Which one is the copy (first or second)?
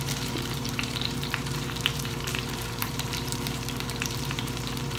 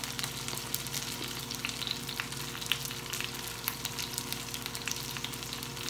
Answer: first